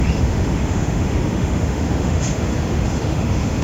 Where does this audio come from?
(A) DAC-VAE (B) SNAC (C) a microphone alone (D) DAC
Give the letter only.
A